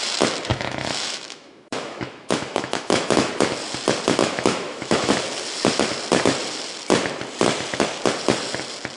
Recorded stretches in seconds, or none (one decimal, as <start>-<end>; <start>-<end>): 0.0-0.5; 3.3-4.2; 5.1-9.0